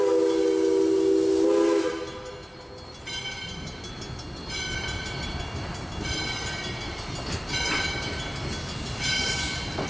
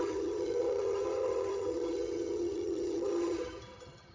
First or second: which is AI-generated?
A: second